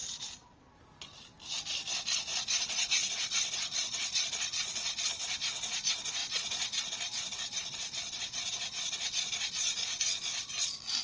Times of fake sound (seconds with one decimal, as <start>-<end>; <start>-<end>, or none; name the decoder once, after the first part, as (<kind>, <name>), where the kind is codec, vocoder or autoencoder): 0.0-0.7 (vocoder, Vocos); 2.5-4.2; 6.2-10.0